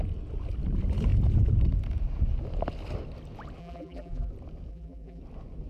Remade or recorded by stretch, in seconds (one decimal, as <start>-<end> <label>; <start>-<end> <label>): 0.0-3.6 recorded; 3.6-4.3 remade; 4.3-4.7 recorded; 4.7-5.2 remade; 5.2-5.7 recorded